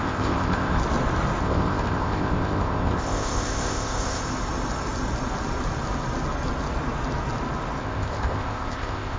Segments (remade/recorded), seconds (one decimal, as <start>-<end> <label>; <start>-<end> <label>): 0.0-0.8 remade; 0.8-1.4 recorded; 1.4-4.2 remade; 4.2-7.8 recorded; 7.8-9.2 remade